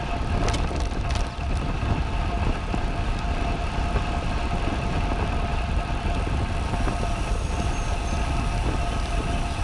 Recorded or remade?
recorded